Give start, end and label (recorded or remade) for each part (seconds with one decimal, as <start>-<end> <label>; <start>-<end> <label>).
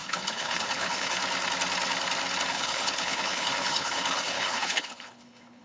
0.0-1.2 remade; 1.2-2.5 recorded; 2.5-5.6 remade